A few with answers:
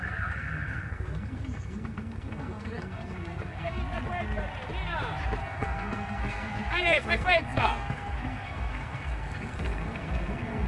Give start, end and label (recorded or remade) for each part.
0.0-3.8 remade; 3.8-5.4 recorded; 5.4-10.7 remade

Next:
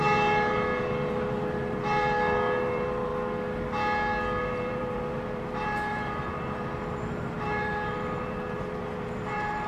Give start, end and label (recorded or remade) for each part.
0.0-3.1 remade; 3.1-4.4 recorded; 4.4-9.7 remade

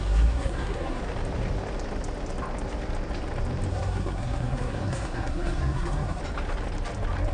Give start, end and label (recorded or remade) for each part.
0.0-1.0 remade; 1.0-3.7 recorded; 3.7-6.2 remade; 6.2-7.3 recorded